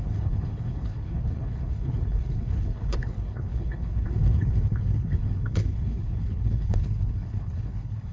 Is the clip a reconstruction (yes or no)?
yes